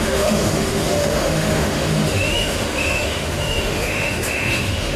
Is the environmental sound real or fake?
fake